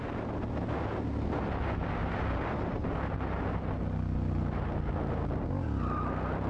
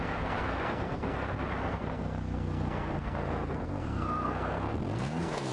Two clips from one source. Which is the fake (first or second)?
second